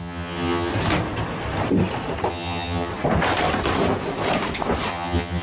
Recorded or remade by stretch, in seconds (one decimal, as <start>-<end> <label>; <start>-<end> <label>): 0.0-0.7 remade; 0.7-2.3 recorded; 2.3-2.9 remade; 2.9-4.9 recorded; 4.9-5.4 remade